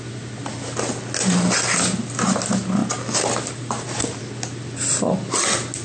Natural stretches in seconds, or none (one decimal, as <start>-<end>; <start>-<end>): 0.0-5.8